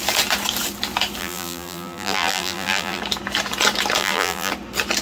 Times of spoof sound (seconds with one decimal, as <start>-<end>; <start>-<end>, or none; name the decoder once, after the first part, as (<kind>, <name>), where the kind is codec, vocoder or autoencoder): 1.2-3.0 (vocoder, BigVGAN v2); 4.0-4.5

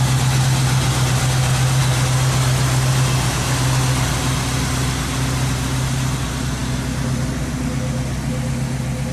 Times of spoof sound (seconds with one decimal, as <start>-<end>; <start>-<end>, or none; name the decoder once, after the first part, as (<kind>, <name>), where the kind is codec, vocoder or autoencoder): none

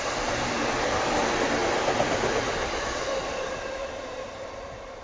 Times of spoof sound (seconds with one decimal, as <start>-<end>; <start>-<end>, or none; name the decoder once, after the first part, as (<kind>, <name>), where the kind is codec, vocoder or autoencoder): 1.6-3.3 (vocoder, BigVGAN v2); 3.8-5.0

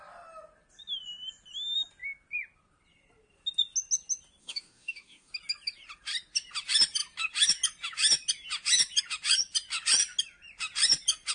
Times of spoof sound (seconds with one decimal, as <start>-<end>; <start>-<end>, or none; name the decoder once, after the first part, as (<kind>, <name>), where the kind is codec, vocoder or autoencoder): 4.4-5.3 (autoencoder, DAC-VAE)

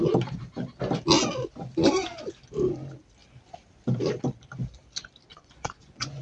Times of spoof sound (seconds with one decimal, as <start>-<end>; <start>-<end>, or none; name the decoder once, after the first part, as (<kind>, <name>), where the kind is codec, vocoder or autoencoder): 5.3-6.2 (vocoder, Vocos)

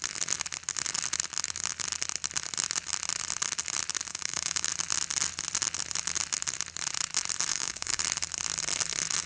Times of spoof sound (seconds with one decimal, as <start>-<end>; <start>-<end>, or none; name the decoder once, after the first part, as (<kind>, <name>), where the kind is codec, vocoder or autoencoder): 4.1-4.7 (codec, DAC); 7.5-8.0

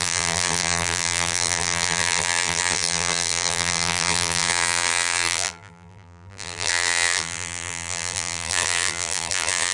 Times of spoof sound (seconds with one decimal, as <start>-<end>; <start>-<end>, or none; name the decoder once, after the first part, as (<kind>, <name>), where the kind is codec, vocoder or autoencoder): 0.0-9.7 (vocoder, BigVGAN v2)